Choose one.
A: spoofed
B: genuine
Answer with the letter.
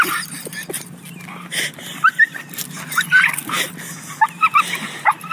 B